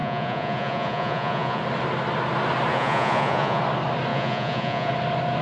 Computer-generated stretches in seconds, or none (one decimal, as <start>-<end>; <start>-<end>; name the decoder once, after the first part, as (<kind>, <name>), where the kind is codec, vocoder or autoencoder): 0.0-1.6 (vocoder, Vocos); 2.7-3.6; 4.1-4.9